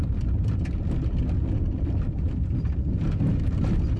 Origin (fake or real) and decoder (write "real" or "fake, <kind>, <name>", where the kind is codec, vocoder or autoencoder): real